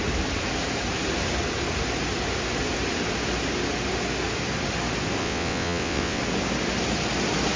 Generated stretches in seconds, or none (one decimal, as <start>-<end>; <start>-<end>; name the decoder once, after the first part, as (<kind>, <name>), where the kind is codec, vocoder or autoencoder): 5.2-6.2 (vocoder, WaveNeXt)